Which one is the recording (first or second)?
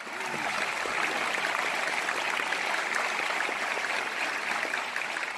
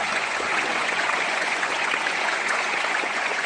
first